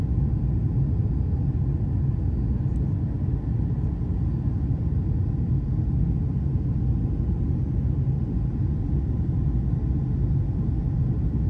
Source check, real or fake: real